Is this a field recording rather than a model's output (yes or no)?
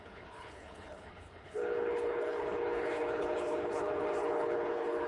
no